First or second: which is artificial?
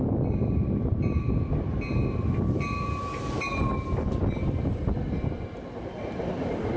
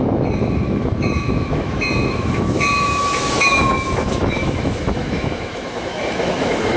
second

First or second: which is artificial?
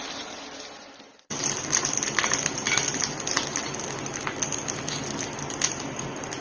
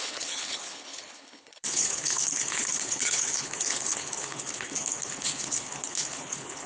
second